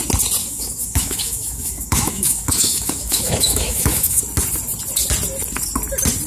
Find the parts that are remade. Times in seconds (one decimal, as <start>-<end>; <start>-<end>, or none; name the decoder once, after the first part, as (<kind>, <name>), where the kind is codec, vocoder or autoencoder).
0.4-4.2 (autoencoder, DAC-VAE)